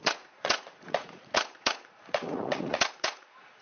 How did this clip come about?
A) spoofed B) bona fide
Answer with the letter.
A